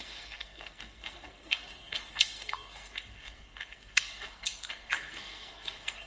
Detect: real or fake fake